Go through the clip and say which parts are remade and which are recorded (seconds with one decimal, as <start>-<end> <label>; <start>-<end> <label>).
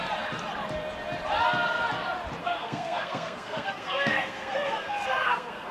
0.0-2.4 recorded; 2.4-5.7 remade